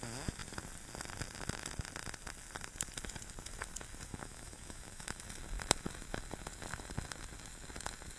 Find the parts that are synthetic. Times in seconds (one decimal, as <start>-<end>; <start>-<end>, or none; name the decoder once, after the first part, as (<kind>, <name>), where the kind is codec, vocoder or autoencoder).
4.1-5.2 (autoencoder, DAC-VAE)